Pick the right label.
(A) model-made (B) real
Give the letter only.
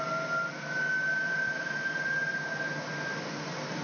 B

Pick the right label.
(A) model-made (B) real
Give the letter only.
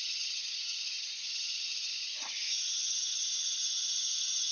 A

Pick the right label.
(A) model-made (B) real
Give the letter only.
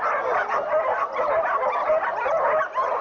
B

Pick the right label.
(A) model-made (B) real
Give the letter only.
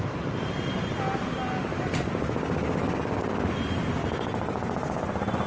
B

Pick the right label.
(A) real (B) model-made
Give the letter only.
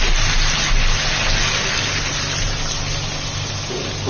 A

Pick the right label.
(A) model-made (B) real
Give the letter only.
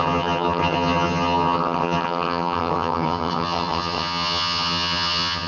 A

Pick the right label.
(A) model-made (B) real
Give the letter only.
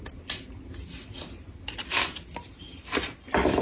B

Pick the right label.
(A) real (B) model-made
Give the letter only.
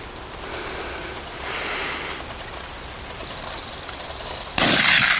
A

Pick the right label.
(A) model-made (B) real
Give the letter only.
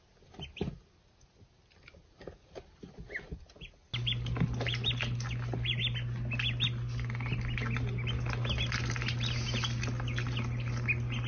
B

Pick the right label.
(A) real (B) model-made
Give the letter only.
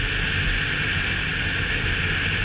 A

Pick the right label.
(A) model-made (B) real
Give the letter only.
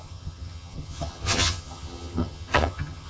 A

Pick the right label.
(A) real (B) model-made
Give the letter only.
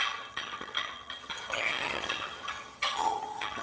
B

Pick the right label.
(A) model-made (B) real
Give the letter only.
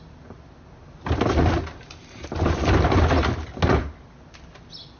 B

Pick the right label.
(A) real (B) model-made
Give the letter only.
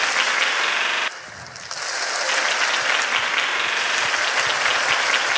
A